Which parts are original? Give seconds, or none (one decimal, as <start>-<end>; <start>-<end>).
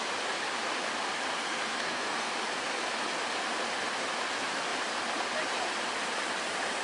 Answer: 0.0-1.3; 2.3-6.8